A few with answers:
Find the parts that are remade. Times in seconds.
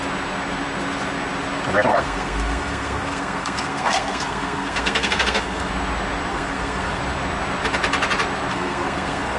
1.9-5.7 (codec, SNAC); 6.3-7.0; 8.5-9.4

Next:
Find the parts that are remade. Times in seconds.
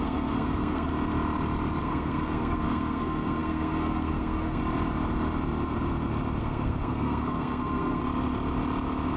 0.0-0.9 (codec, SNAC); 1.8-4.6; 6.4-8.0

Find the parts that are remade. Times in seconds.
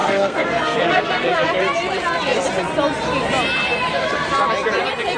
0.0-1.5 (codec, SNAC)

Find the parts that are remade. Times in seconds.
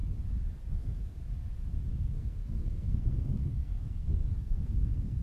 0.7-1.2 (codec, SNAC); 1.9-5.2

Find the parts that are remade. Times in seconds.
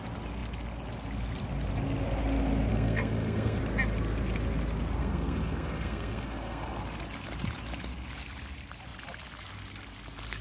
2.7-3.6 (codec, SNAC); 5.0-6.8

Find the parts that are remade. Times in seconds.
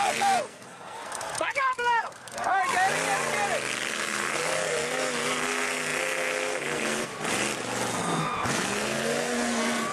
0.0-2.6 (codec, SNAC); 3.9-7.1; 8.0-9.9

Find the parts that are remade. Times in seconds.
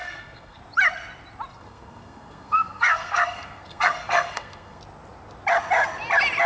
0.0-0.6 (codec, SNAC); 1.5-4.8